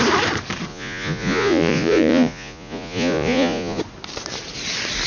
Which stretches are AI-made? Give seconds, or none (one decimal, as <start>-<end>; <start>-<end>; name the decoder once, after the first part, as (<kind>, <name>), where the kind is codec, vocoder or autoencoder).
0.7-3.8 (vocoder, Vocos)